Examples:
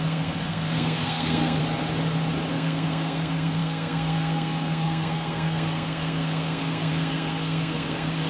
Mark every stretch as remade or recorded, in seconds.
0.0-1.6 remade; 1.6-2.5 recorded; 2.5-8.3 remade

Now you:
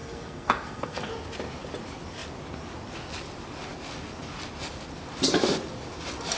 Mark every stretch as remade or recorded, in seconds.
0.0-1.1 remade; 1.1-6.4 recorded

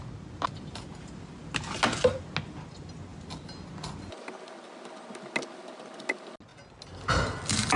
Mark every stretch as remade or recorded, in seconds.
0.0-7.8 recorded